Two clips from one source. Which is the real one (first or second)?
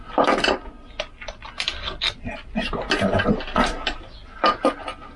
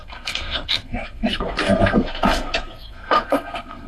first